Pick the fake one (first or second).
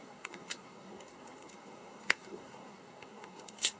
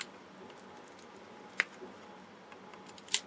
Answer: first